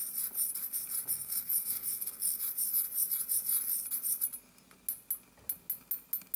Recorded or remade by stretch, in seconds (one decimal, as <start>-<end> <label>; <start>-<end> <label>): 0.0-1.1 recorded; 1.1-2.4 remade; 2.4-6.4 recorded